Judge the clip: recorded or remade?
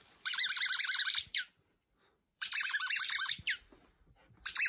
remade